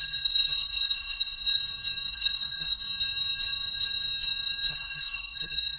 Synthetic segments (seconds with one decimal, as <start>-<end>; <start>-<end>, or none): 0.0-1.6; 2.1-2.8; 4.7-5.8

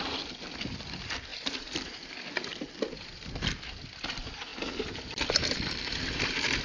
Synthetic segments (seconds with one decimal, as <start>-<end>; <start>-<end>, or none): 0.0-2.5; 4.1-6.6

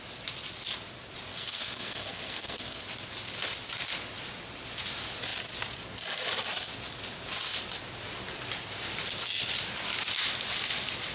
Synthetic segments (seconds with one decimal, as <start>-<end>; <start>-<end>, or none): 1.3-2.8